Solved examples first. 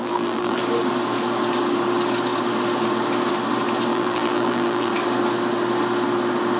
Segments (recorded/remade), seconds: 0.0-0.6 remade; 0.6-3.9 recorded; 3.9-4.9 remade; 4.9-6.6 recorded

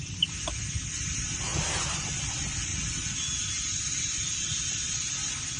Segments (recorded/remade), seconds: 0.0-2.7 recorded; 2.7-3.5 remade; 3.5-5.6 recorded

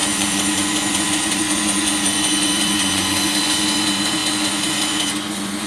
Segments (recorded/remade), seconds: 0.0-5.7 remade

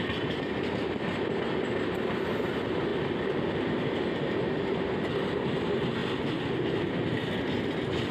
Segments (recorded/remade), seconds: 0.0-8.1 recorded

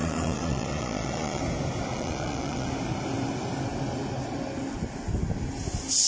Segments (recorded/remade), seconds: 0.0-1.4 remade; 1.4-1.9 recorded; 1.9-2.7 remade; 2.7-6.1 recorded

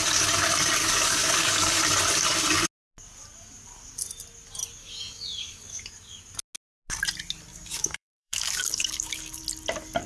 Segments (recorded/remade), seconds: 0.0-0.8 recorded; 0.8-1.8 remade; 1.8-4.8 recorded; 4.8-5.8 remade; 5.8-7.5 recorded; 7.5-9.4 remade; 9.4-10.1 recorded

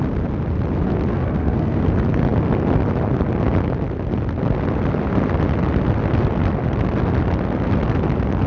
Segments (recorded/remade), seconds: 0.0-1.1 recorded; 1.1-1.8 remade; 1.8-8.5 recorded

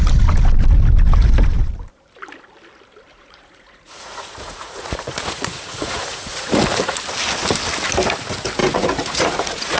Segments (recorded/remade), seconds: 0.0-3.1 recorded; 3.1-6.6 remade; 6.6-8.6 recorded; 8.6-9.8 remade